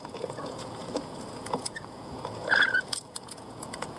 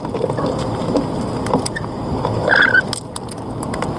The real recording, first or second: second